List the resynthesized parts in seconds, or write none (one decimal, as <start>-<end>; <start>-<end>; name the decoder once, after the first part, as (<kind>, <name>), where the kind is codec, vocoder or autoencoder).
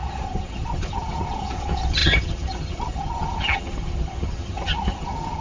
0.0-5.4 (vocoder, HiFi-GAN)